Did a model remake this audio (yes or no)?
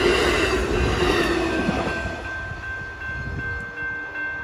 no